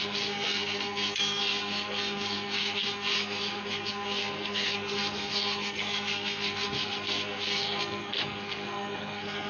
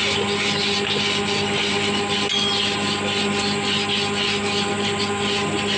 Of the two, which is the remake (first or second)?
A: first